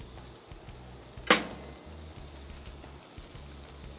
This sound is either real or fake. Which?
real